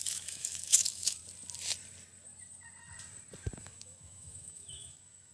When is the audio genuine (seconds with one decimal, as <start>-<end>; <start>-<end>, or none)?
1.2-3.6